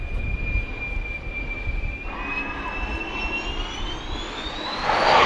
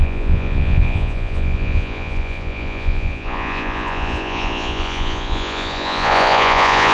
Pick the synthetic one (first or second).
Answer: second